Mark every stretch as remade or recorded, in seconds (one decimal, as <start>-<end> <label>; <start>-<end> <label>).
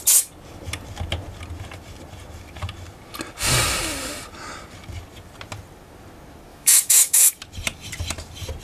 0.0-6.5 recorded; 6.5-7.3 remade; 7.3-8.6 recorded